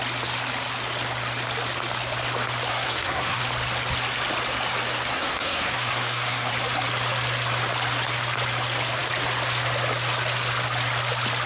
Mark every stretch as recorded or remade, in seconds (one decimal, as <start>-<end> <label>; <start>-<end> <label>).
0.0-2.7 recorded; 2.7-3.4 remade; 3.4-5.1 recorded; 5.1-6.5 remade; 6.5-11.5 recorded